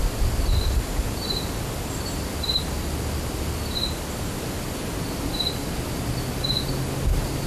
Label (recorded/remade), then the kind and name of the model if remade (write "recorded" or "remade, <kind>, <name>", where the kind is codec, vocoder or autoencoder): recorded